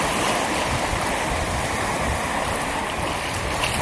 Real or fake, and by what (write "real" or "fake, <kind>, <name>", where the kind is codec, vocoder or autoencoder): real